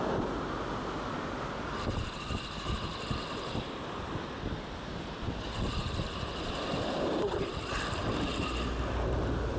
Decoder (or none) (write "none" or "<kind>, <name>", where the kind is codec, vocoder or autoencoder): none